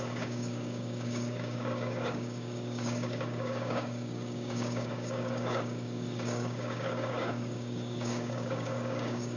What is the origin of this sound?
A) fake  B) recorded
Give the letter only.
A